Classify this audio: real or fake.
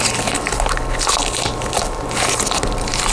real